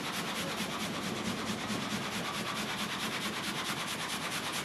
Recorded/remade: recorded